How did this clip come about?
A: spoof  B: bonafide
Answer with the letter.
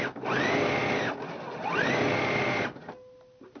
B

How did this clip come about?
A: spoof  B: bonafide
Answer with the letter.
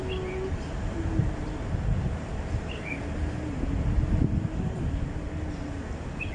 B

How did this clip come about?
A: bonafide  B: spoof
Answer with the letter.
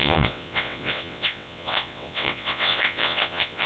B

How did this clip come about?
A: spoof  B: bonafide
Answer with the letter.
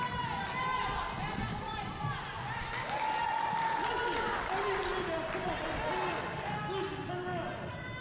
B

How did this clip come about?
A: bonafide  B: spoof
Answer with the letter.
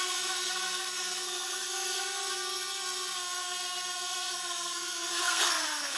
B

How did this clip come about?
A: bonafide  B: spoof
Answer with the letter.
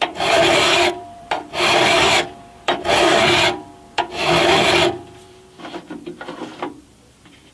B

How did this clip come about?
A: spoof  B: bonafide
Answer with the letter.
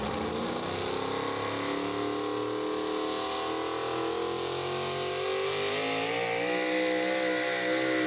B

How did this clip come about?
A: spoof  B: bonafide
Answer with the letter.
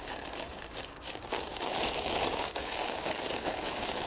A